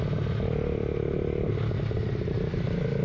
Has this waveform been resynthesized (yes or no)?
no